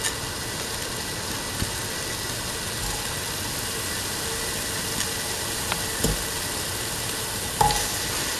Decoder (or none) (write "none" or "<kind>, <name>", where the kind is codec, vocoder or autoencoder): none